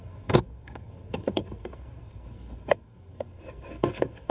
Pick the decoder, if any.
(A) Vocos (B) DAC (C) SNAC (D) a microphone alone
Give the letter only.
C